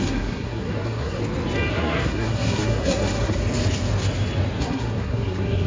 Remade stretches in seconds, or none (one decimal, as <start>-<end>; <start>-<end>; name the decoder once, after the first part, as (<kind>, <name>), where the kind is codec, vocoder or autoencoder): 0.0-1.2 (codec, SNAC); 1.7-3.4; 4.6-5.7

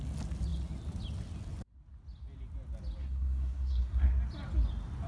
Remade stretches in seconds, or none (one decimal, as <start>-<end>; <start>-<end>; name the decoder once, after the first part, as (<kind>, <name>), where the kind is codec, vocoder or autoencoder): 3.0-4.1 (codec, SNAC)

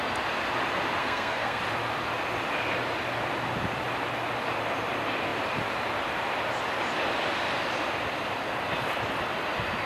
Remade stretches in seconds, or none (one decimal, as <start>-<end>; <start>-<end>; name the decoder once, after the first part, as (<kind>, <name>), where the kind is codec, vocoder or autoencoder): 1.0-1.6 (codec, SNAC)

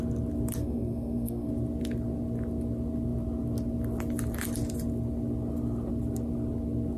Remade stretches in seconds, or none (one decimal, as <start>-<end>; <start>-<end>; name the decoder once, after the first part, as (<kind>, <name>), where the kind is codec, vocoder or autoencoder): 0.6-1.5 (codec, SNAC)

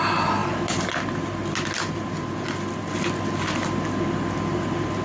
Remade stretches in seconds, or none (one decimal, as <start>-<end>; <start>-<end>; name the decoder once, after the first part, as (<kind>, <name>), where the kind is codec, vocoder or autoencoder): none

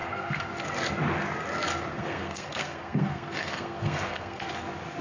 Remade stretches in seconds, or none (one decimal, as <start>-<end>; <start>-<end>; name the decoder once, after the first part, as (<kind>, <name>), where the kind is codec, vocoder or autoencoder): 0.0-0.5 (codec, SNAC); 1.9-4.5

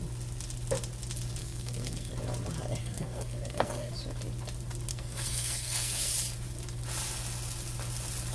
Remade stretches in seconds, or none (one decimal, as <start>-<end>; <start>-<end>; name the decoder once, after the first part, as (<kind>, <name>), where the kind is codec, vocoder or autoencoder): 1.4-2.1 (codec, SNAC); 2.8-3.9; 4.9-6.1

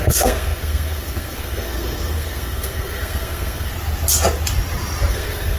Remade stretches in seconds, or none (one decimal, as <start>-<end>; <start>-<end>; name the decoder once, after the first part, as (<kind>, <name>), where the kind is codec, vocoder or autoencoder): 0.0-3.7 (codec, SNAC); 5.1-5.6